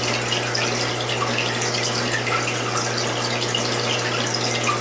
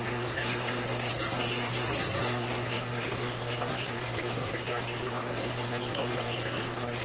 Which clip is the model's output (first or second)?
second